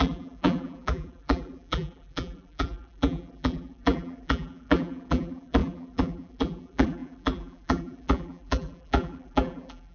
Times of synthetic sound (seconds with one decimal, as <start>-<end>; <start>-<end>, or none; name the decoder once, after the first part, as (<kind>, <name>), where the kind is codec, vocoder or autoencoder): 0.0-9.9 (vocoder, BigVGAN v2)